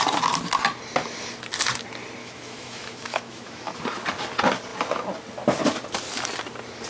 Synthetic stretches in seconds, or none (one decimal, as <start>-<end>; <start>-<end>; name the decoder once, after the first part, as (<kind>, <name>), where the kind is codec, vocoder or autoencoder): 2.2-3.8 (autoencoder, DAC-VAE)